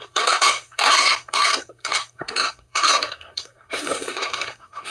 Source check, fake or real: fake